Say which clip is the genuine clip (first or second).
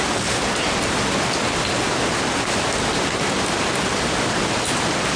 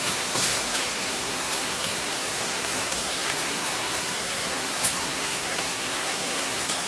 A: first